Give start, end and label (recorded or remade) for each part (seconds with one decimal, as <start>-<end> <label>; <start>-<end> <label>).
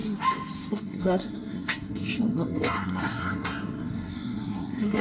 0.0-0.7 recorded; 0.7-5.0 remade